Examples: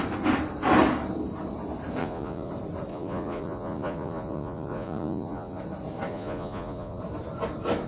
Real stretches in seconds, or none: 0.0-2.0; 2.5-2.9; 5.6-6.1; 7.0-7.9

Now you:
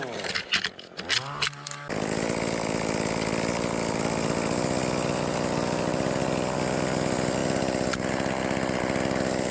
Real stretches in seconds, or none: 0.0-9.5

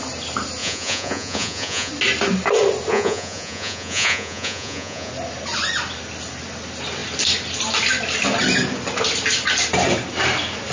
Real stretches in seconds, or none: 0.0-0.6; 1.9-2.9; 5.1-10.7